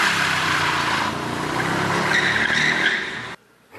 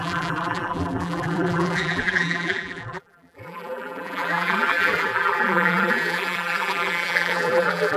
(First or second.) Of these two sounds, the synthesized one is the second